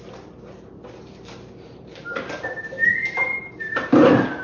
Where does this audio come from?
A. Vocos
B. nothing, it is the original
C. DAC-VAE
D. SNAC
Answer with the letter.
B